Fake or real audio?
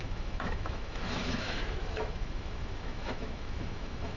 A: fake